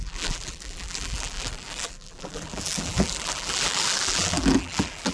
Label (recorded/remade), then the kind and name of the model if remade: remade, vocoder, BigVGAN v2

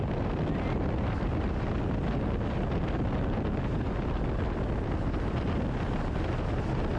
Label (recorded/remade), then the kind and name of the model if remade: recorded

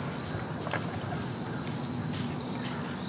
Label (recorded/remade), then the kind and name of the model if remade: remade, vocoder, BigVGAN v2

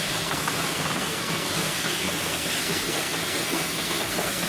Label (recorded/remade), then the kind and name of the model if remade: remade, codec, SNAC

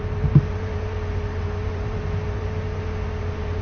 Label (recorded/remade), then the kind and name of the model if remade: remade, vocoder, BigVGAN v2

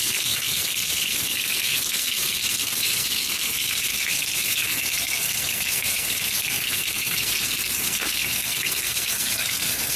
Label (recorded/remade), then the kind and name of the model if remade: remade, codec, SNAC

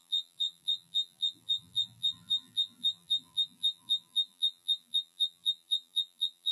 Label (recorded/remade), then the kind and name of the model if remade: remade, vocoder, BigVGAN v2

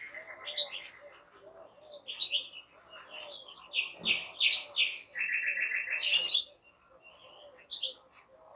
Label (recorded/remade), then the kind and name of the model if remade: recorded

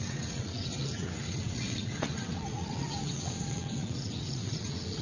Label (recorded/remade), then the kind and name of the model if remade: remade, vocoder, WaveNeXt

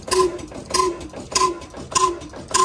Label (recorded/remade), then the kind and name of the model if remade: recorded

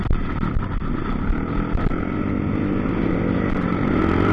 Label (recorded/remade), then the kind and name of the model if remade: recorded